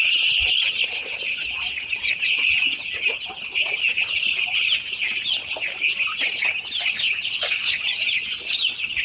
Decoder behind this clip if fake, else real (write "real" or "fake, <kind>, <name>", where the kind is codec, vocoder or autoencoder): real